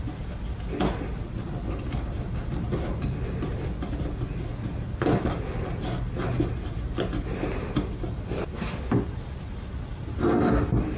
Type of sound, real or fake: real